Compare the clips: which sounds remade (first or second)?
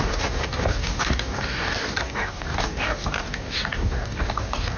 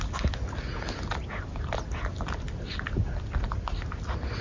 first